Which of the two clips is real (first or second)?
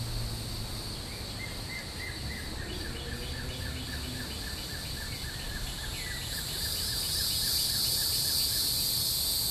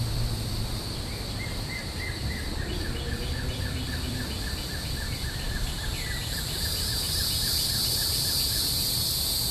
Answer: first